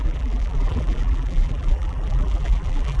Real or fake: fake